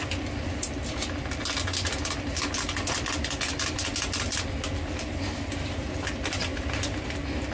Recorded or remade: recorded